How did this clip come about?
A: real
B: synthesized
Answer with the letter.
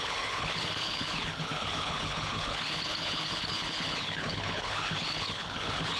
B